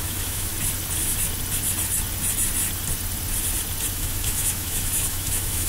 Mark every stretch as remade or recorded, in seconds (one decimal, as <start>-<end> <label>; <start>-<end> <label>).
0.0-0.5 remade; 0.5-3.9 recorded; 3.9-5.7 remade